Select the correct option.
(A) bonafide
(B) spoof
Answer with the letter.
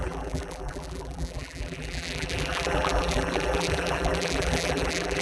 B